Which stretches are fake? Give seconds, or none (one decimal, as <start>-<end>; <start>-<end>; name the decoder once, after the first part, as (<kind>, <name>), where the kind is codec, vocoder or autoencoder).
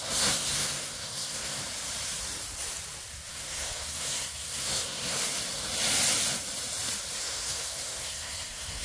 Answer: 0.0-1.6 (codec, SNAC); 3.3-5.2; 7.2-8.8